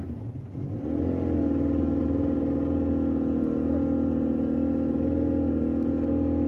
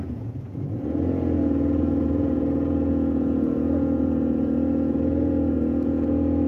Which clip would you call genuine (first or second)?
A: first